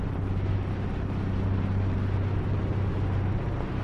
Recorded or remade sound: recorded